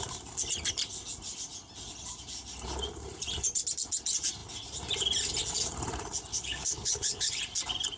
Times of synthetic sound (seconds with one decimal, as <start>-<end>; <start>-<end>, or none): 6.3-7.4